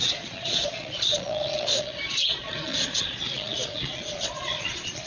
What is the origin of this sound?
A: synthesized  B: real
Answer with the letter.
A